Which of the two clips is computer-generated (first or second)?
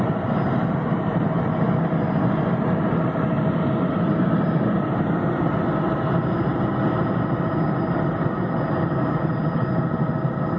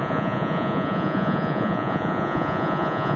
second